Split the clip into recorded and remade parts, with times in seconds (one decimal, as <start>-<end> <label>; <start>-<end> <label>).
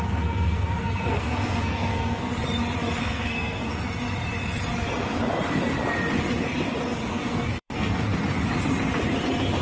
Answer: 0.0-2.3 remade; 2.3-3.0 recorded; 3.0-3.7 remade; 3.7-7.1 recorded; 7.1-8.1 remade; 8.1-9.6 recorded